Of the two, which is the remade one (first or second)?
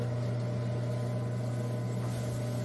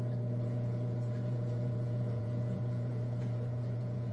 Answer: second